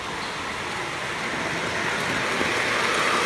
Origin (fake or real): real